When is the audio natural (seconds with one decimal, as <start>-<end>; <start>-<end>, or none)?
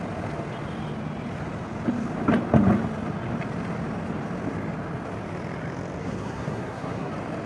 0.0-6.0; 7.1-7.5